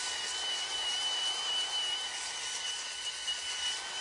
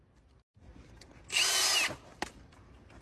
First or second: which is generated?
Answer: second